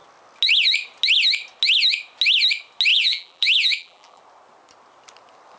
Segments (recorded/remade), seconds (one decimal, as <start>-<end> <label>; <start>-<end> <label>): 0.0-2.9 recorded; 2.9-4.2 remade; 4.2-5.6 recorded